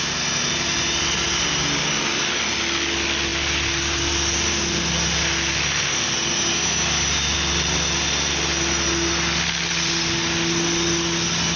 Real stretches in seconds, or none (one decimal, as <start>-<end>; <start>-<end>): 0.0-11.6